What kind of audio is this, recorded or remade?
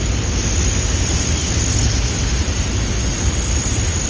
recorded